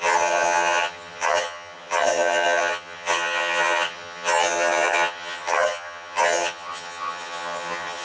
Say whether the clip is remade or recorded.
remade